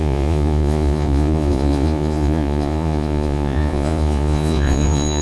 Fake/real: fake